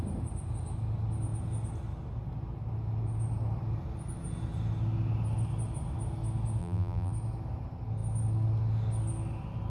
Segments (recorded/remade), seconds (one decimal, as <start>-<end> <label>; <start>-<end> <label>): 0.0-6.6 recorded; 6.6-7.1 remade; 7.1-9.7 recorded